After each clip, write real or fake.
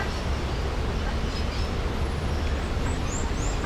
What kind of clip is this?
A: real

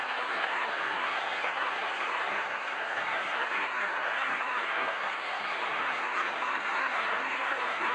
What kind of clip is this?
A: fake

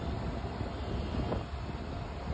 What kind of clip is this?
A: real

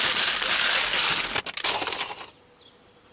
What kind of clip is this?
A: real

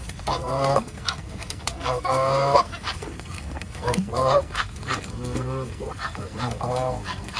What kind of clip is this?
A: fake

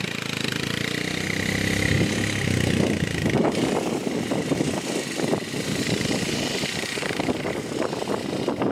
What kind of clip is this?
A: real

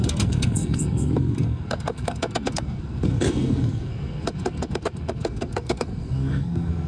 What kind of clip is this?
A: fake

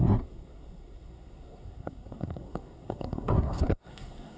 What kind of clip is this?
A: fake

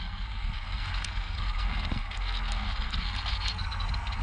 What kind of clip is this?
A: fake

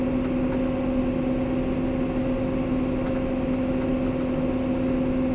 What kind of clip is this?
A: real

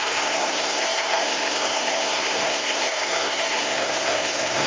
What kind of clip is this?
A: fake